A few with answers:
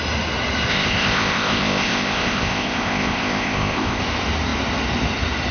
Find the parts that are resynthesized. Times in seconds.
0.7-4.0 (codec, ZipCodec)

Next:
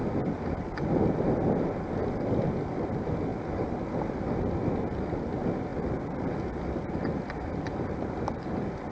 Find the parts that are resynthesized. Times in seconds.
none

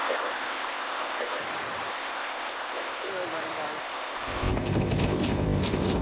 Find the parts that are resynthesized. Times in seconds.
0.0-1.4 (codec, ZipCodec); 1.9-3.1; 3.8-6.0

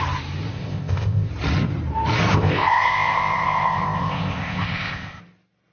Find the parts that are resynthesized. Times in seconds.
0.5-1.3 (codec, ZipCodec); 2.3-5.2

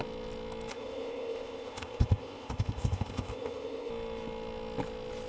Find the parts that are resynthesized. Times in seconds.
0.7-3.9 (codec, ZipCodec)

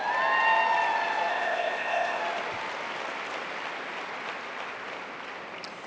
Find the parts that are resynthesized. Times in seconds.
1.3-2.2 (codec, ZipCodec)

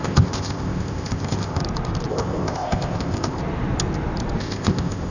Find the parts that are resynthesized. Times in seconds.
0.0-1.6 (codec, ZipCodec); 2.1-3.4; 4.4-5.1